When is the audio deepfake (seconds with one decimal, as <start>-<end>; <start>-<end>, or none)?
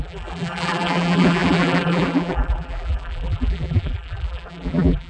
0.0-5.1